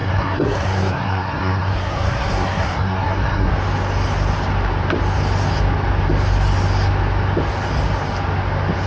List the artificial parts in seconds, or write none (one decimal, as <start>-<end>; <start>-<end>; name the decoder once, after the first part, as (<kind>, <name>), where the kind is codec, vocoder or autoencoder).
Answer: 0.0-3.5 (codec, SNAC)